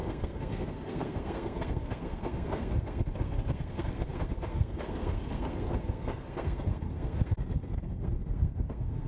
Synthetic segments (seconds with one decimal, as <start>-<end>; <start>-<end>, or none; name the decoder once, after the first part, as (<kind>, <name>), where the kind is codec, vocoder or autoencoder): 0.0-9.1 (codec, SNAC)

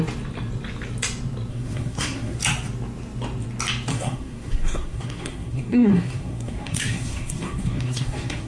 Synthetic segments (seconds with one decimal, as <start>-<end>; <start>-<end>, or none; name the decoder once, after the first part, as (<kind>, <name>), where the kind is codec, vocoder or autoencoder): 1.5-2.4 (codec, SNAC); 3.9-8.5

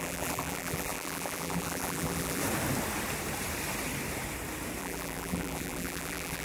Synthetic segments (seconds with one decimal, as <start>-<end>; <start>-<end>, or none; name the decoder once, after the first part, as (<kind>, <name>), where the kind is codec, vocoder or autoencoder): 0.0-2.4 (vocoder, BigVGAN v2); 4.8-6.4

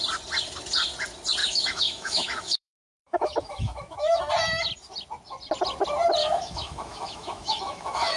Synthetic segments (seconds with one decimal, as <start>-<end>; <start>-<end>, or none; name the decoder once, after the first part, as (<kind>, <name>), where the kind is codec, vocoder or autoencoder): 1.4-4.2 (autoencoder, DAC-VAE); 6.2-8.2

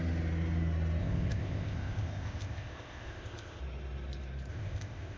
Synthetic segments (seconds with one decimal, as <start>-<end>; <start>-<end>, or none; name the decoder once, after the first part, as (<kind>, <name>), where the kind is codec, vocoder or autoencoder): 1.0-3.6 (codec, ZipCodec); 4.5-5.2

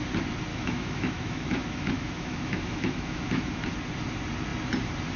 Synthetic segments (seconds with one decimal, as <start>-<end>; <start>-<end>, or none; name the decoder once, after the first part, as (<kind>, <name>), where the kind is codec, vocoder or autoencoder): 0.5-3.6 (autoencoder, DAC-VAE)

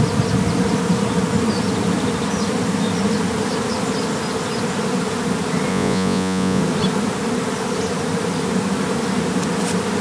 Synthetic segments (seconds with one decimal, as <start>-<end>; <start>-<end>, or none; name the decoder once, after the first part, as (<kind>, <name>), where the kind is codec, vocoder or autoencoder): 5.7-6.6 (vocoder, Vocos)

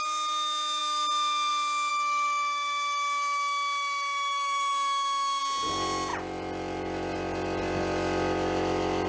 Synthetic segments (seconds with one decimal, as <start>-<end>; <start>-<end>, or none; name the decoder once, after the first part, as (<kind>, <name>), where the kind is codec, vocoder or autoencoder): 1.9-5.4 (autoencoder, DAC-VAE)